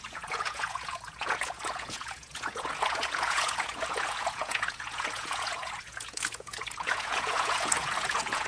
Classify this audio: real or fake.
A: fake